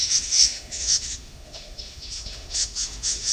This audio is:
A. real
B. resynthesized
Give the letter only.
B